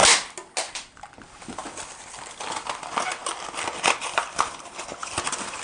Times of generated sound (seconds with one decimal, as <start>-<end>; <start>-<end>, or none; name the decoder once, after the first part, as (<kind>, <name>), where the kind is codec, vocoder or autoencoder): 0.7-5.6 (vocoder, BigVGAN v2)